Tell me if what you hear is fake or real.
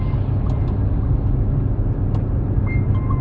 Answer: real